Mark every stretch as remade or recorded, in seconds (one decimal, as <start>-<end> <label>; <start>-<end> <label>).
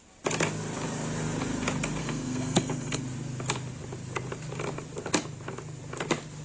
0.0-2.0 recorded; 2.0-3.0 remade; 3.0-6.4 recorded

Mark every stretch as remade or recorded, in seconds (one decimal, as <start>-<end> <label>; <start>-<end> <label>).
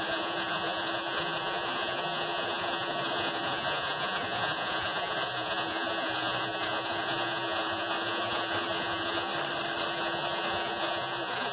0.0-9.3 remade; 9.3-9.9 recorded; 9.9-11.5 remade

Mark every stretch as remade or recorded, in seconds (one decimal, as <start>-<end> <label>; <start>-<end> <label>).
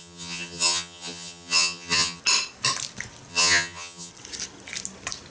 0.0-2.2 remade; 2.2-3.3 recorded; 3.3-4.1 remade; 4.1-5.3 recorded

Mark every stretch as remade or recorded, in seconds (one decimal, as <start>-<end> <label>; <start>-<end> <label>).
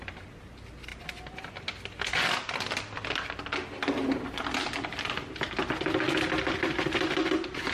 0.0-7.7 recorded